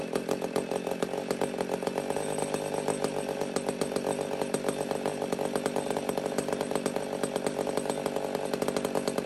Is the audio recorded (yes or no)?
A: yes